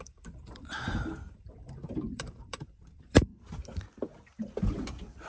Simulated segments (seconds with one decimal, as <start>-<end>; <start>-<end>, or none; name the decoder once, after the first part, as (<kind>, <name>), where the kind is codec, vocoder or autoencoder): 0.0-3.3 (vocoder, BigVGAN v2)